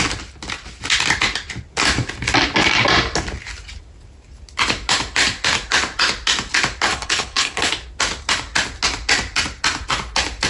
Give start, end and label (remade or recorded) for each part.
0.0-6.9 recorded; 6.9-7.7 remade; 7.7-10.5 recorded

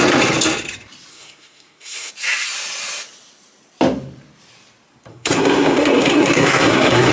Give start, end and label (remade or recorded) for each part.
0.0-1.1 recorded; 1.1-2.1 remade; 2.1-5.1 recorded; 5.1-7.1 remade

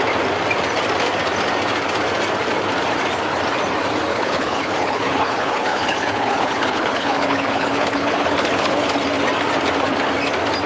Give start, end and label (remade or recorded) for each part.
0.0-4.1 recorded; 4.1-8.9 remade; 8.9-10.7 recorded

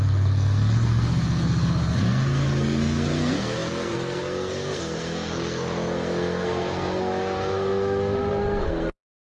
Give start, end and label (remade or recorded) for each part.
0.0-9.3 remade